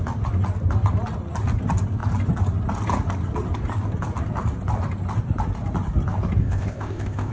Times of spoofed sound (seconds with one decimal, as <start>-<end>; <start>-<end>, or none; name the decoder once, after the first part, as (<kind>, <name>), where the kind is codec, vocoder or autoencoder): 6.4-7.3 (codec, ZipCodec)